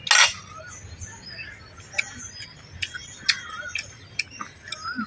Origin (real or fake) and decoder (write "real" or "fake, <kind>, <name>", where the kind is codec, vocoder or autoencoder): real